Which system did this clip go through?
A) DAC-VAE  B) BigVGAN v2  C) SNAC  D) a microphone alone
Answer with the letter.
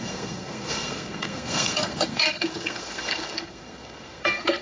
C